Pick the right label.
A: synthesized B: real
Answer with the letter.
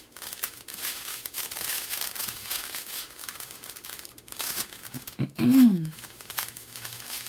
A